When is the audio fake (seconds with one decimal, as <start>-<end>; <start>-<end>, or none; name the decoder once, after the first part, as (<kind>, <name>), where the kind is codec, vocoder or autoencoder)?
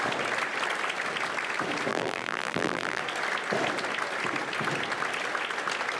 1.9-3.0 (vocoder, BigVGAN v2)